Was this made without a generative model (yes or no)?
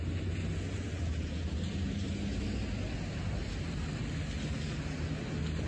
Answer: yes